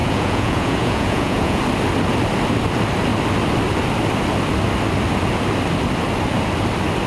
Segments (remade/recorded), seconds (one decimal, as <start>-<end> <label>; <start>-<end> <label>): 0.0-1.6 remade; 1.6-7.1 recorded